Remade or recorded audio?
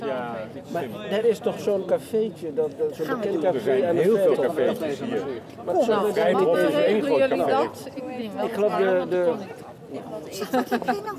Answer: recorded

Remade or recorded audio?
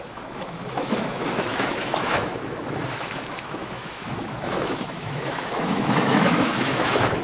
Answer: remade